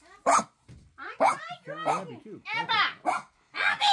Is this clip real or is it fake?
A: real